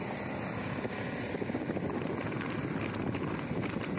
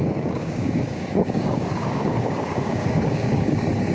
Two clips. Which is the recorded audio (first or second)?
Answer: first